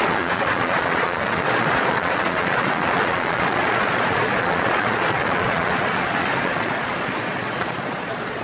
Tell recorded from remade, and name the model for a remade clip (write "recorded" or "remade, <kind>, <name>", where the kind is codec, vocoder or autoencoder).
remade, vocoder, Vocos